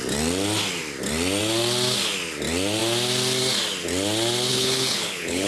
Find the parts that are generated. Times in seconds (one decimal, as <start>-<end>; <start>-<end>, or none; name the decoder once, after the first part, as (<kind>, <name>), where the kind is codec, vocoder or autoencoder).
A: 4.5-5.5 (codec, HILCodec)